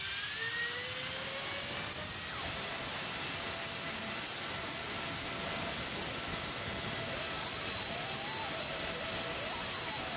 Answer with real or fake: real